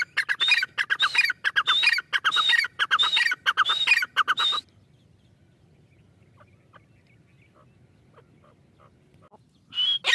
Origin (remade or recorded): recorded